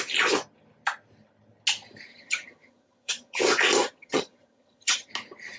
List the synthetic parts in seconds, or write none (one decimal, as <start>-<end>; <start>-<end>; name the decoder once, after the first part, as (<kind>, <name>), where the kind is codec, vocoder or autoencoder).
2.1-3.4 (vocoder, HiFi-GAN); 3.8-5.1